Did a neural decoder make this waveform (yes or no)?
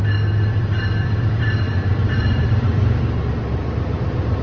yes